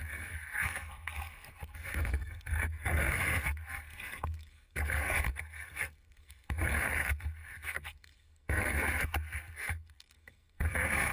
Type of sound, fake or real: fake